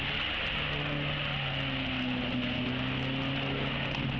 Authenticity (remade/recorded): recorded